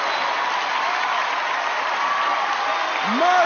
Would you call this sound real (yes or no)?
yes